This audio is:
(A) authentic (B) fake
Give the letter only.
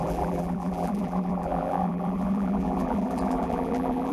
B